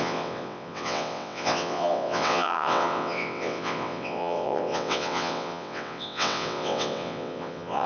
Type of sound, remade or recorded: remade